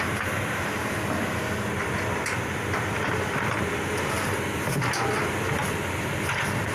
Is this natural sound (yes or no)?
yes